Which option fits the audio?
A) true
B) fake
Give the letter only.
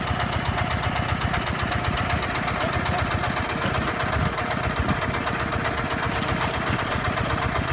A